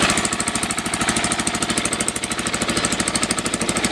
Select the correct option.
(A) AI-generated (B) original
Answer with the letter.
B